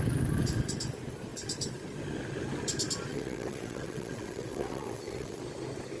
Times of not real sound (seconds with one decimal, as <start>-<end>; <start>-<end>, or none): 3.1-5.4